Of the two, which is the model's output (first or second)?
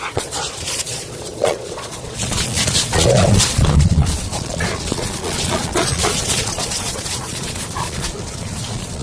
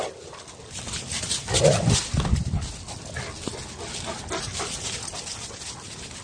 first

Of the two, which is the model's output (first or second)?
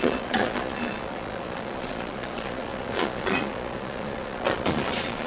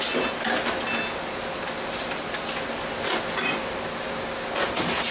first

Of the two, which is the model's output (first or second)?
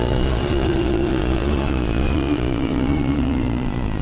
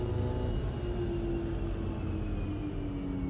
first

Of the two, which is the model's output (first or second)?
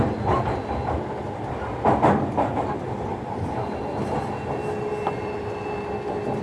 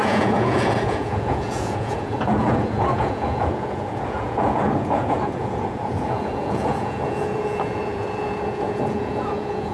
second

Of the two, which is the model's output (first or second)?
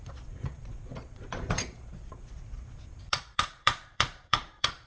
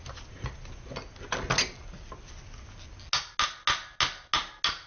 first